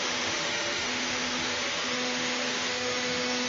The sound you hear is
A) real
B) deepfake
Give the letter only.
B